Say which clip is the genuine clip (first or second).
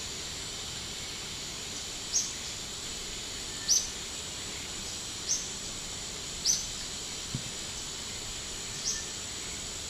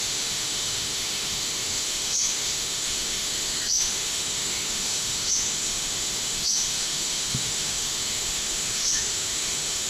first